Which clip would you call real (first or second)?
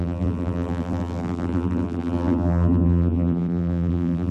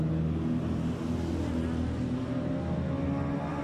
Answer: second